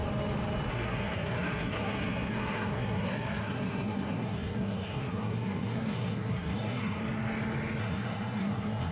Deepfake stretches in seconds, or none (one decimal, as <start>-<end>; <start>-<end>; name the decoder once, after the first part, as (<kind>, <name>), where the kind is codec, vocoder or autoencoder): 0.7-7.0 (codec, SNAC); 7.8-8.9